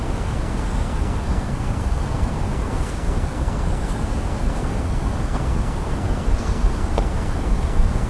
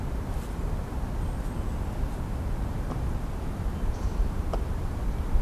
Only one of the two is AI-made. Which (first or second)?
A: first